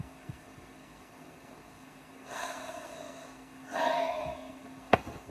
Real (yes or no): no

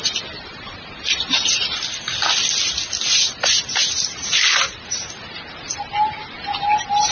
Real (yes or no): yes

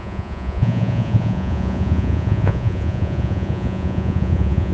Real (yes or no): no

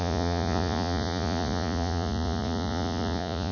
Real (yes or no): no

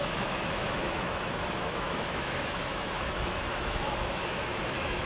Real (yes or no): no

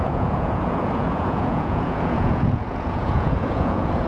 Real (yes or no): no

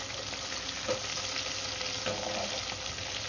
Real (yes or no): yes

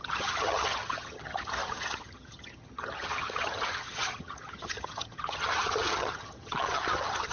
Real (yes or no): no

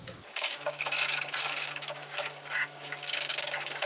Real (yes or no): no